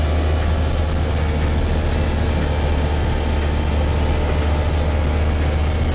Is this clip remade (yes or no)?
no